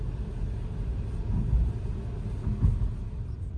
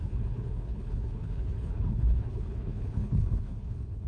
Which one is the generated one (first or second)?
second